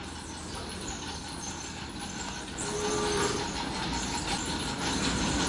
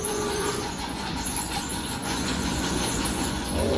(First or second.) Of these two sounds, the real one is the first